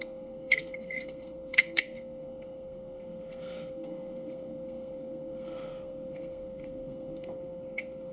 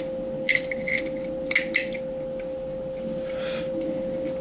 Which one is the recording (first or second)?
second